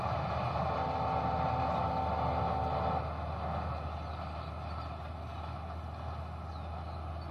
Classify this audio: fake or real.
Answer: real